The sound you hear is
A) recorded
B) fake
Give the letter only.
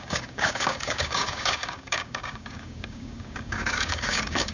B